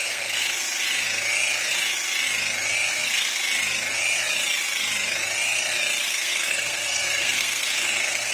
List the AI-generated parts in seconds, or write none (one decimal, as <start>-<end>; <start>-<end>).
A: 0.0-0.4; 2.9-3.4; 6.0-8.3